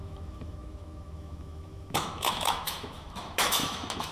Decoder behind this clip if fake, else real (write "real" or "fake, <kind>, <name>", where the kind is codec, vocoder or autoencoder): fake, autoencoder, DAC-VAE